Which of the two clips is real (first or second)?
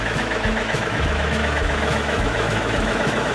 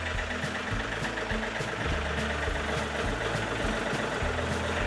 second